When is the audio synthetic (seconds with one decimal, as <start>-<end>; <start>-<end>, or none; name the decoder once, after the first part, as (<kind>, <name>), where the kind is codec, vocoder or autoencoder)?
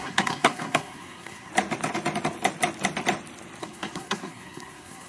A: 0.0-1.5 (codec, SNAC); 3.6-5.1